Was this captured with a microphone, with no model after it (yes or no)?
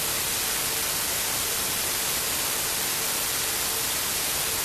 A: no